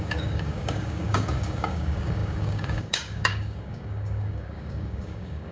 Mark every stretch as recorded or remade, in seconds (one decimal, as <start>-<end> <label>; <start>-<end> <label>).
0.0-5.5 remade